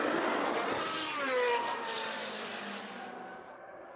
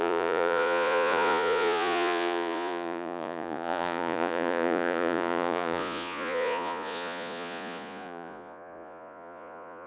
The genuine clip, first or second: first